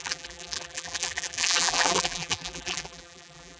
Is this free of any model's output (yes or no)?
no